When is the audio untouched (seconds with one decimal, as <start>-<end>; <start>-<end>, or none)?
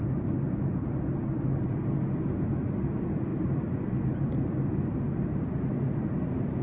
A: 0.0-6.6